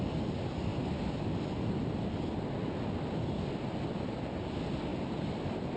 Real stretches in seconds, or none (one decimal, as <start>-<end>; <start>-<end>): 0.0-5.8